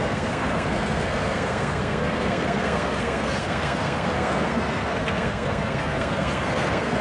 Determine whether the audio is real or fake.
fake